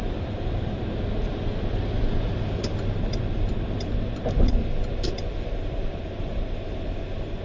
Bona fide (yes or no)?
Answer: no